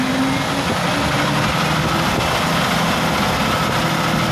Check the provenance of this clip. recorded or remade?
recorded